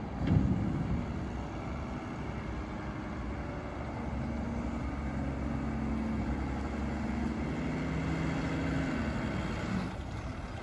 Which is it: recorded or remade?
recorded